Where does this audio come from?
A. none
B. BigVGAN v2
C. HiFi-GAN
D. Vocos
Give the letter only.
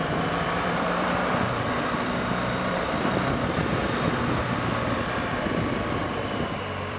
B